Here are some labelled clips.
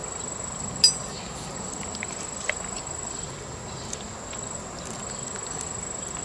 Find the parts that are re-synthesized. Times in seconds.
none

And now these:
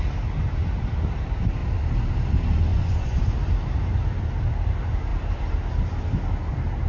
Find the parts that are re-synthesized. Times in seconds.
2.7-3.2 (vocoder, Vocos)

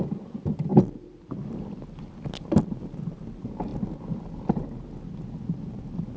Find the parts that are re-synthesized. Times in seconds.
none

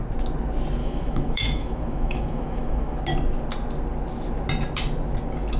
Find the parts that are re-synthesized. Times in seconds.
0.8-3.0 (autoencoder, DAC-VAE)

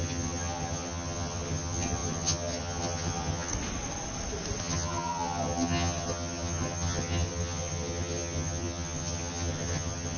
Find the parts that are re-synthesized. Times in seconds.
0.0-3.5 (vocoder, HiFi-GAN); 4.6-10.2

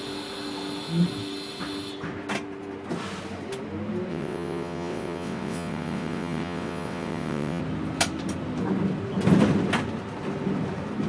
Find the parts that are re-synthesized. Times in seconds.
4.1-7.6 (vocoder, WaveNeXt)

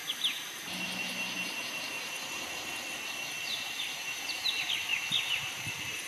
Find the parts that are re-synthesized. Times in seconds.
none